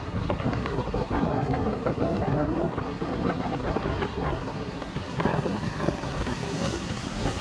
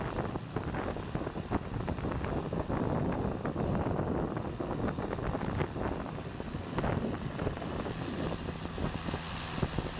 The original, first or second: second